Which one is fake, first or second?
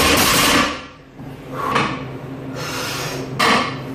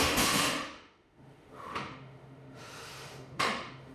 second